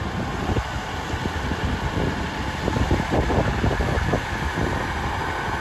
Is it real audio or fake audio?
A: real